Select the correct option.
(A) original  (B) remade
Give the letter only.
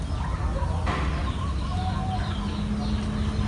A